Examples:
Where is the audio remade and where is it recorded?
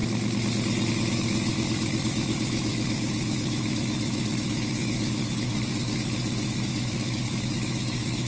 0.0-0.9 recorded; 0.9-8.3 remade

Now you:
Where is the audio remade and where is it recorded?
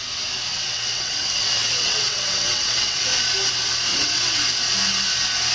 0.0-0.5 recorded; 0.5-3.0 remade; 3.0-3.9 recorded; 3.9-4.4 remade; 4.4-5.5 recorded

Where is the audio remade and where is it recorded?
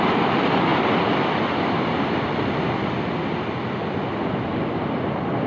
0.0-5.5 recorded